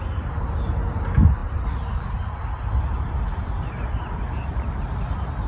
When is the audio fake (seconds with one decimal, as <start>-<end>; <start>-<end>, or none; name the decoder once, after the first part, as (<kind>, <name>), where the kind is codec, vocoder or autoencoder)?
none

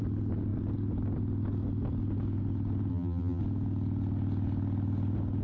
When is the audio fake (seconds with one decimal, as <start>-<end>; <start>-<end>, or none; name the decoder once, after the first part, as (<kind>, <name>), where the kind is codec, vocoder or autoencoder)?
2.9-3.4 (vocoder, BigVGAN v2)